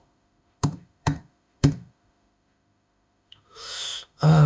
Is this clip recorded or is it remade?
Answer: remade